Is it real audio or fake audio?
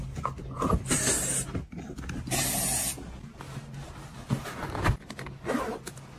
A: real